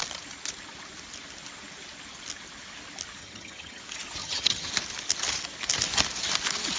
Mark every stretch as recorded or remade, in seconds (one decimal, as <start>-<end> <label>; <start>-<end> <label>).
0.0-3.2 recorded; 3.2-3.8 remade; 3.8-4.2 recorded; 4.2-4.7 remade; 4.7-6.8 recorded